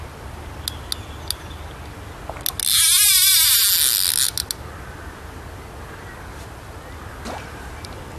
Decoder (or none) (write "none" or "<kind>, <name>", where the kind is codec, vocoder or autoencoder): none